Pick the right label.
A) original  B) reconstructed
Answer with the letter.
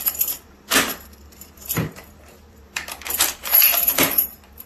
B